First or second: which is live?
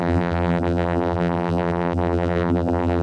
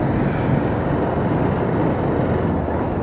second